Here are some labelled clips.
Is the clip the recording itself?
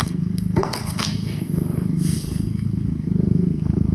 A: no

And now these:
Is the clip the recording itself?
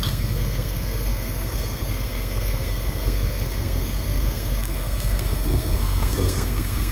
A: no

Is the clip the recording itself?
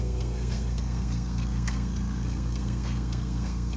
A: no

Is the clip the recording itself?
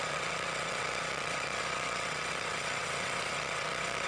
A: no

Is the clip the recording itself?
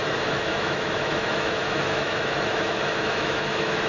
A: no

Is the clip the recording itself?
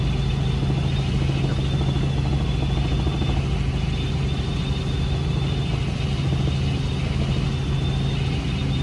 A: yes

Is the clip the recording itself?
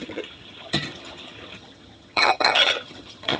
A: no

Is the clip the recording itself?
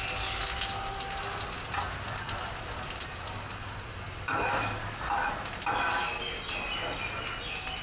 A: yes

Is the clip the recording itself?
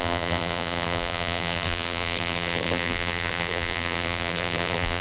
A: no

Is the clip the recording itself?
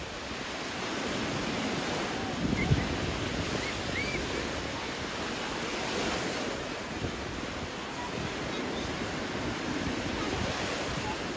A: yes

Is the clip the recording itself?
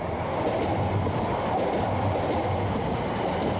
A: yes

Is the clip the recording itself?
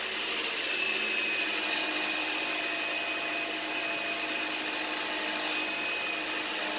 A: yes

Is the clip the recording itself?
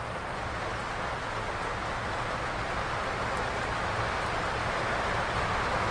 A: yes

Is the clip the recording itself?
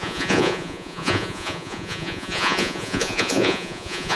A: no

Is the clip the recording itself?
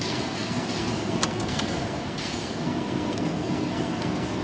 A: no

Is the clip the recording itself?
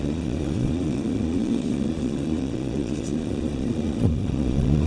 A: no